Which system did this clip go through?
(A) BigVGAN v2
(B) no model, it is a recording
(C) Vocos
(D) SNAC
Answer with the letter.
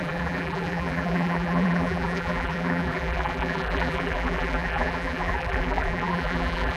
A